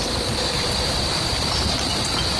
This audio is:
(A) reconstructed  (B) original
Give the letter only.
B